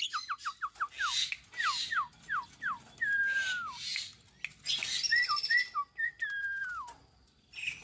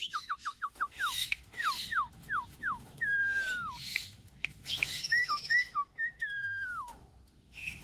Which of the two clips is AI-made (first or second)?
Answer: second